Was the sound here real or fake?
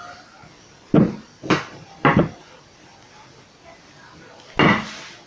real